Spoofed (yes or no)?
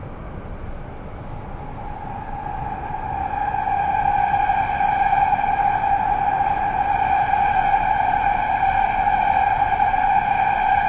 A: no